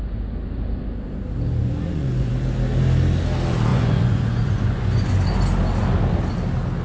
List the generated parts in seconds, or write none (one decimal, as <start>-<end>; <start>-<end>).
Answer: 1.6-2.3; 3.7-5.1